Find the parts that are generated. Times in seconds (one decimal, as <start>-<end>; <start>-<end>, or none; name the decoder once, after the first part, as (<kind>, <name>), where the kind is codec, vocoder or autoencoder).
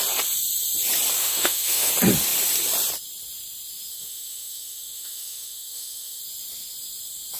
1.2-1.9 (autoencoder, DAC-VAE); 3.9-6.2